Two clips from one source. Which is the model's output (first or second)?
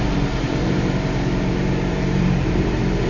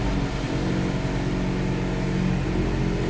first